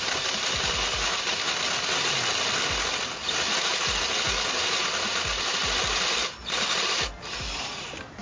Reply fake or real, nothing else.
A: real